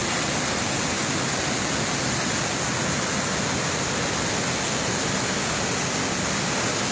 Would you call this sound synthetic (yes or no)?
no